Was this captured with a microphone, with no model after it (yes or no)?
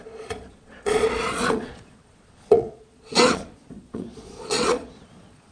no